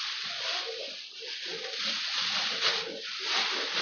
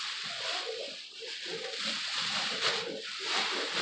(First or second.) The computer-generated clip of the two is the second